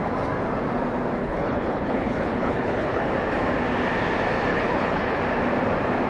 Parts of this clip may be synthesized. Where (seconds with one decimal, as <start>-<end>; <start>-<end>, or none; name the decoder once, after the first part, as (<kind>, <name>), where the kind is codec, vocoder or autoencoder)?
1.2-3.0 (codec, HILCodec); 4.5-5.2